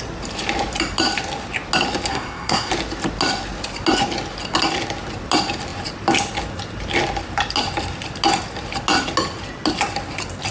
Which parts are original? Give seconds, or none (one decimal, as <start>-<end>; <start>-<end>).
0.0-2.1; 2.7-10.5